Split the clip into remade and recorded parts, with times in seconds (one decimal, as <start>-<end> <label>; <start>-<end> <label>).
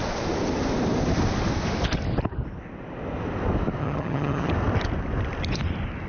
0.0-3.8 recorded; 3.8-4.5 remade; 4.5-6.1 recorded